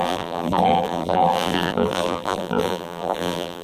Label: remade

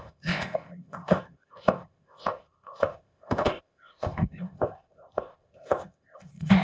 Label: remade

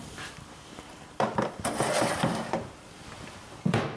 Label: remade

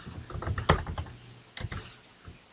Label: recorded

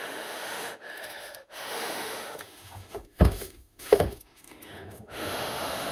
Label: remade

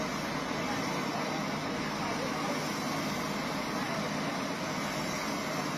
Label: recorded